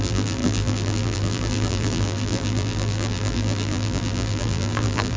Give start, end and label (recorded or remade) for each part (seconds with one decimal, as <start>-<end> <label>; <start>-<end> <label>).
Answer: 0.0-5.2 remade